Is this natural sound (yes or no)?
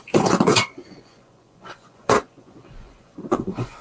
no